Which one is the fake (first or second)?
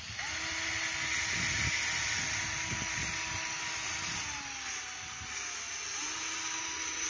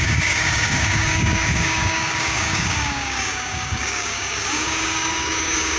second